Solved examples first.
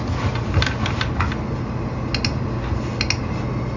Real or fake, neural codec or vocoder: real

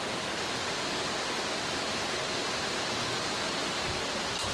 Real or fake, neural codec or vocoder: real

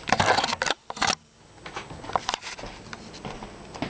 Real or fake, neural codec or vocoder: real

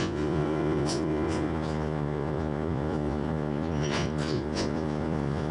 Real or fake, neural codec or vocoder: fake, vocoder, Vocos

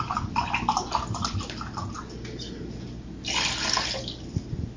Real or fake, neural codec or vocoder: real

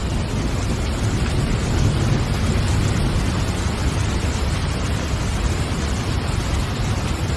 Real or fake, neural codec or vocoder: real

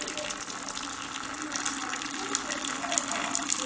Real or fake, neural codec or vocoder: real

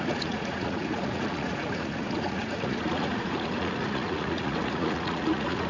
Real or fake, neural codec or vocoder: fake, vocoder, Vocos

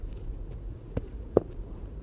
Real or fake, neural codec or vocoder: fake, vocoder, Vocos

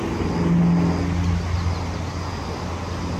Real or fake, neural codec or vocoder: real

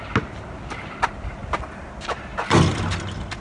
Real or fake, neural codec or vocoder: real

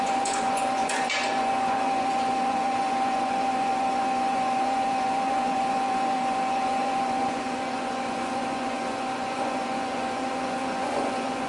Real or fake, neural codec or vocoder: fake, vocoder, Vocos